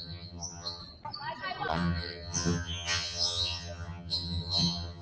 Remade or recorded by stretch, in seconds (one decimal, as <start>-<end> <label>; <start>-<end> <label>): 0.0-0.8 remade; 0.8-1.7 recorded; 1.7-5.0 remade